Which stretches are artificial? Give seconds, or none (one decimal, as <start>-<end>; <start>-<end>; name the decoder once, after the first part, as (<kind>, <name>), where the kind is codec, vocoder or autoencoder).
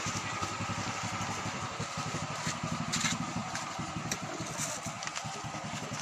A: none